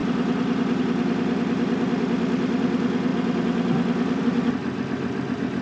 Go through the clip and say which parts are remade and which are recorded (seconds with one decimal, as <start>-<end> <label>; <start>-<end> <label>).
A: 0.0-5.6 recorded